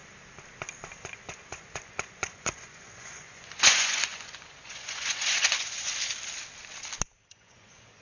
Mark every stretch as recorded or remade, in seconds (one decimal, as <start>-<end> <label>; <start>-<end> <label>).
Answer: 0.0-1.0 recorded; 1.0-5.9 remade; 5.9-7.3 recorded; 7.3-8.0 remade